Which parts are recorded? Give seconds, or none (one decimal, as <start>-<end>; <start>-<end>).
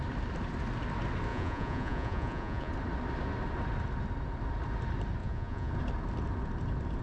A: 0.0-1.3; 2.7-5.2; 5.7-7.0